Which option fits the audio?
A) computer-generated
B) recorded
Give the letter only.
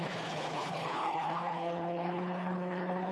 A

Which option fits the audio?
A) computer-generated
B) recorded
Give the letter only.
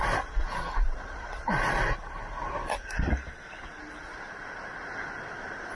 B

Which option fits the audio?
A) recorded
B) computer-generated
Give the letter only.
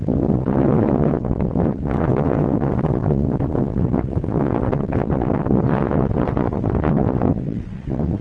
B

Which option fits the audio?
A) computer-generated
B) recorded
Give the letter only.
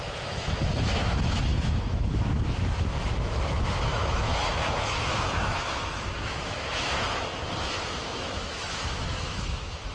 A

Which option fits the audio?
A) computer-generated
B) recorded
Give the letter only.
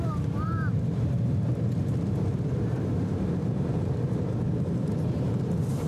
A